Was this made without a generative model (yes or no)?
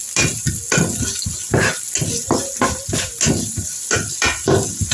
yes